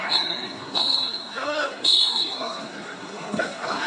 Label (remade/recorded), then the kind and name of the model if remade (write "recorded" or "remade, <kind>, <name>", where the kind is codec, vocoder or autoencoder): remade, codec, SNAC